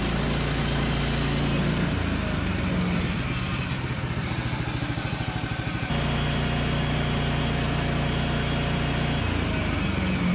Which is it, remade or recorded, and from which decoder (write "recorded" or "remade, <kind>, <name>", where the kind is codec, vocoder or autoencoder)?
recorded